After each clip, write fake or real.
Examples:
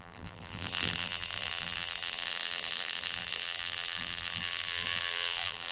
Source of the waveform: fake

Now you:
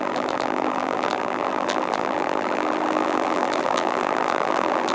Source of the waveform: fake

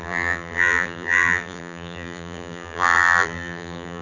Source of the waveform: fake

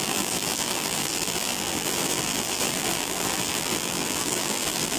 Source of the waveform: fake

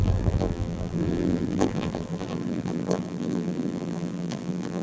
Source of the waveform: fake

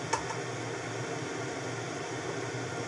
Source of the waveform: real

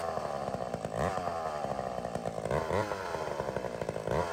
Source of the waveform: real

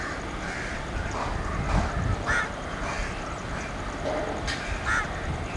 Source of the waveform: fake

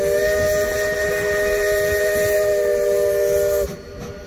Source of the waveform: real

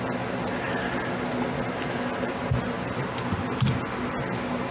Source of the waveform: real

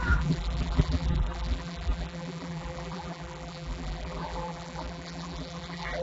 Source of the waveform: fake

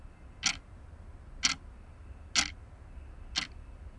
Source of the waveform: real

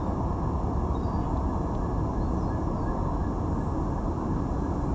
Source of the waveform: real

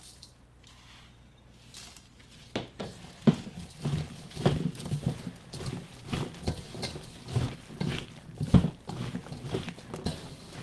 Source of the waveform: real